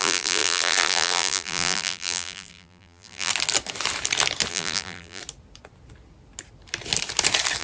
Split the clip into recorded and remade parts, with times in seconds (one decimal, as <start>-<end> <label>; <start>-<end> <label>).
0.0-3.3 remade; 3.3-4.5 recorded; 4.5-5.2 remade; 5.2-7.6 recorded